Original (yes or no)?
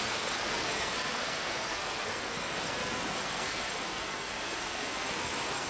no